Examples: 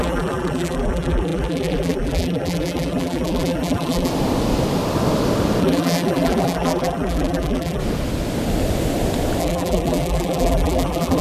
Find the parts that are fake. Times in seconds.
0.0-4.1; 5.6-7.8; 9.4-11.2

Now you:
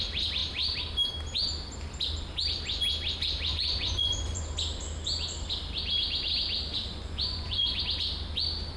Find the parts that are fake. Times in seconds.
3.5-4.4; 6.7-7.8

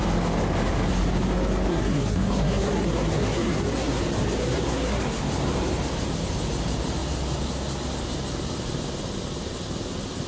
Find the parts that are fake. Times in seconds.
1.7-4.0; 4.4-5.0

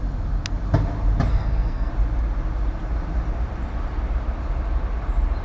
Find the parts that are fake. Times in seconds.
1.3-1.9

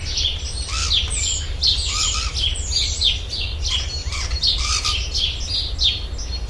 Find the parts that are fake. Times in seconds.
none